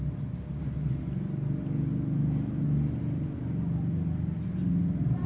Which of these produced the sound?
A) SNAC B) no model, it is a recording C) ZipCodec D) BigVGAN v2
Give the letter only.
B